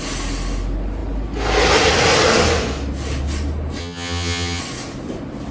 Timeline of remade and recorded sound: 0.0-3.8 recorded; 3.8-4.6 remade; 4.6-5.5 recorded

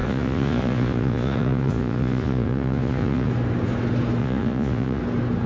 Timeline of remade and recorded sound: 0.0-3.3 remade; 3.3-4.2 recorded; 4.2-5.0 remade; 5.0-5.5 recorded

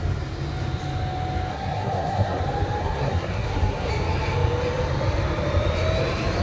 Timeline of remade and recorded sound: 0.0-1.5 recorded; 1.5-2.4 remade; 2.4-2.8 recorded; 2.8-3.9 remade; 3.9-6.4 recorded

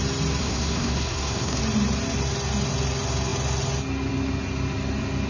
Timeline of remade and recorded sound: 0.0-0.4 recorded; 0.4-1.6 remade; 1.6-5.3 recorded

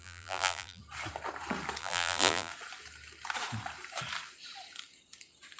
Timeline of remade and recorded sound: 0.0-0.8 remade; 0.8-1.8 recorded; 1.8-2.5 remade; 2.5-5.6 recorded

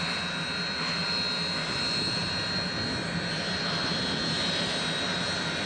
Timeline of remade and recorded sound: 0.0-5.7 recorded

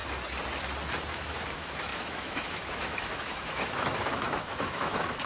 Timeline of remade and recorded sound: 0.0-1.1 recorded; 1.1-5.3 remade